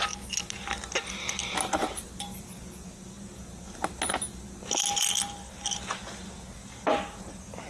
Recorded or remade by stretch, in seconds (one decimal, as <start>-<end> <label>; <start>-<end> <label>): 0.0-7.7 recorded